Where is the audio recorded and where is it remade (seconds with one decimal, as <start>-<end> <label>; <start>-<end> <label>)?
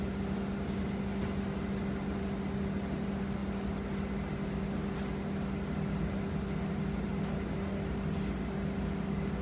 0.0-9.4 recorded